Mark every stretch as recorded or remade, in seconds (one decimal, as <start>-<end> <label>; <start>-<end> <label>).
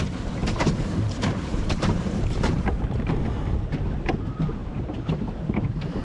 0.0-0.4 recorded; 0.4-3.2 remade; 3.2-4.6 recorded; 4.6-6.0 remade